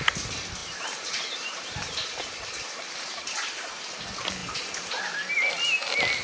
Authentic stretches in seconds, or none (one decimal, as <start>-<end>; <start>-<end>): 0.0-0.6; 3.8-4.4; 5.0-6.2